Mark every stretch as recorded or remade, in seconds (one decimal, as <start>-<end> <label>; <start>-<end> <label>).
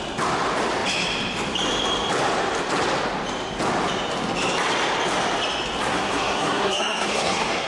0.0-5.9 recorded; 5.9-7.7 remade